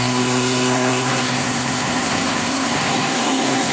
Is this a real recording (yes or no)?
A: no